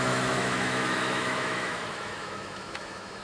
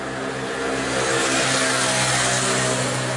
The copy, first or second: first